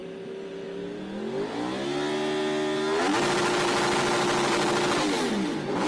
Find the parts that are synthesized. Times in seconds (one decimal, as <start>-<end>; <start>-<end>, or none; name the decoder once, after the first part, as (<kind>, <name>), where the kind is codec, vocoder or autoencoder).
none